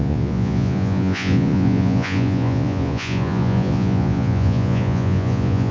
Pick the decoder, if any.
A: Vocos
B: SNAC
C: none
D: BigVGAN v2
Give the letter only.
A